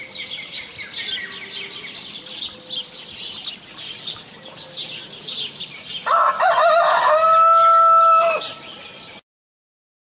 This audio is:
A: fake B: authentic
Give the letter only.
B